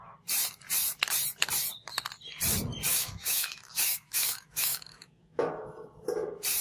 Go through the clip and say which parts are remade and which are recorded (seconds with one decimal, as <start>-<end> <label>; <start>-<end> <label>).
0.0-2.9 recorded; 2.9-5.5 remade; 5.5-6.6 recorded